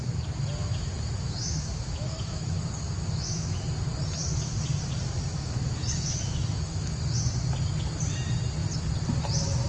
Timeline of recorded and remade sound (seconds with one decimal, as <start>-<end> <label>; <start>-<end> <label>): 0.0-0.6 recorded; 0.6-3.6 remade; 3.6-5.3 recorded; 5.3-7.0 remade; 7.0-9.7 recorded